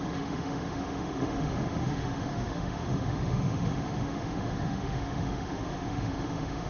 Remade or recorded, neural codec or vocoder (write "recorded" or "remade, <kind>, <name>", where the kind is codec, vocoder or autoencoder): remade, autoencoder, DAC-VAE